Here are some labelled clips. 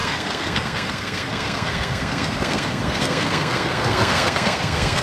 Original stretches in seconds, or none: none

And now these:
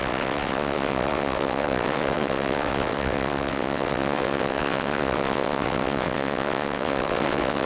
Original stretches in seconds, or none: none

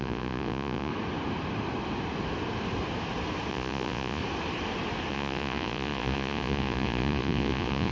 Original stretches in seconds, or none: 0.9-3.5; 4.2-5.1

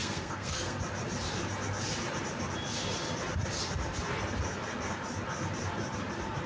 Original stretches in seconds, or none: 0.8-6.5